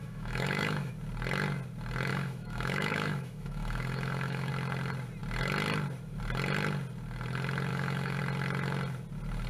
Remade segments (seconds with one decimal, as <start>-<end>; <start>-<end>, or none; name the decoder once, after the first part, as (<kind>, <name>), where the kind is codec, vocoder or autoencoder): 0.0-0.9 (autoencoder, DAC-VAE); 2.1-4.5; 7.7-8.2